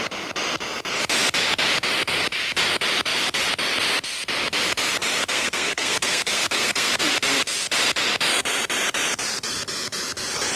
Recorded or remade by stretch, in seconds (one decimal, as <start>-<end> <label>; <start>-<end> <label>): 0.0-5.2 recorded; 5.2-7.0 remade; 7.0-10.6 recorded